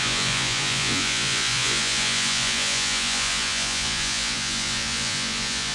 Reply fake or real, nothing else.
fake